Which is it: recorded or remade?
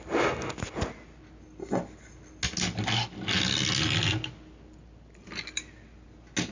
recorded